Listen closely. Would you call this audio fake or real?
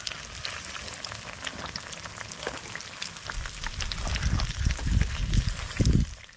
real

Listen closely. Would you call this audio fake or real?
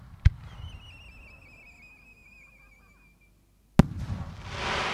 real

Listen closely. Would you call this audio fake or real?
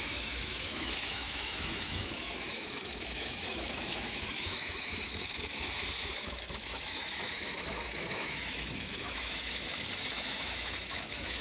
fake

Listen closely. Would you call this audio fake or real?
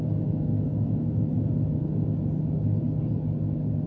real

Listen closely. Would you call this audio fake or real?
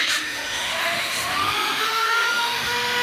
fake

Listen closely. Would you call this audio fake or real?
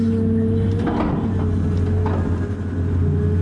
real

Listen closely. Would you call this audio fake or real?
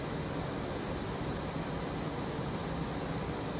real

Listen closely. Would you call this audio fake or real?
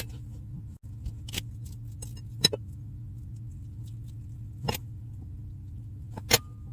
real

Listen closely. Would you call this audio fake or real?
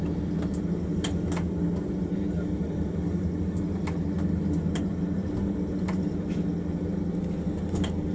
real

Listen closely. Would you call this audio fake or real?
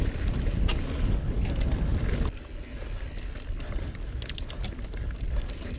real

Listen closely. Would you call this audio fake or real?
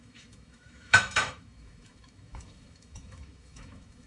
fake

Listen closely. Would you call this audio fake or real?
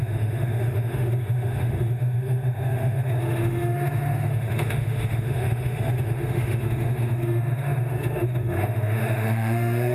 fake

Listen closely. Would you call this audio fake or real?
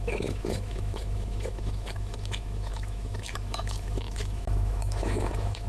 fake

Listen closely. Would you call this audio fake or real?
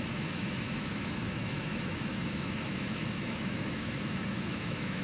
fake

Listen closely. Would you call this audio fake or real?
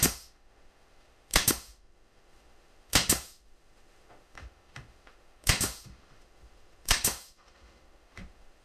fake